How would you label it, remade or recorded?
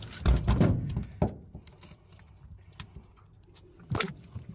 recorded